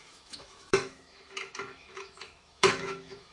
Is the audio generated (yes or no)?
yes